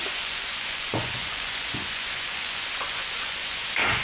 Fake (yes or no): yes